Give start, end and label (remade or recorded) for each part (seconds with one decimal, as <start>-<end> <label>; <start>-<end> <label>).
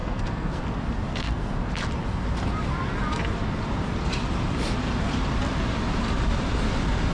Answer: 0.0-0.6 remade; 0.6-1.1 recorded; 1.1-1.7 remade; 1.7-7.1 recorded